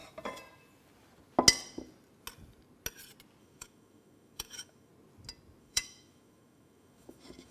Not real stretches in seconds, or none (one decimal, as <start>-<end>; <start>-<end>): 3.4-4.9; 5.6-7.5